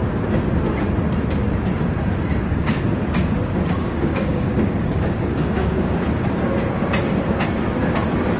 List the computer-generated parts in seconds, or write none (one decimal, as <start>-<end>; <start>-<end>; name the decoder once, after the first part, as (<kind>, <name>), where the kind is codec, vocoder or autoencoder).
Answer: 2.5-6.0 (codec, DAC)